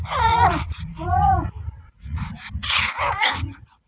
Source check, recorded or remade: remade